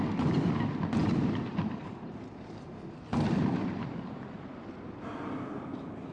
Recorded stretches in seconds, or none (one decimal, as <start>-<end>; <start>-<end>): 0.0-1.0; 4.7-6.1